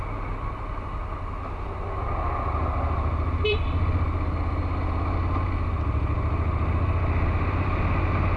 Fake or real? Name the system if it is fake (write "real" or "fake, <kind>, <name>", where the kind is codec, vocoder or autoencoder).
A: real